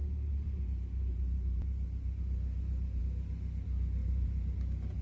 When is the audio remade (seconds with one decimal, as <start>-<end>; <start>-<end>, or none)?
0.0-3.0; 4.0-4.5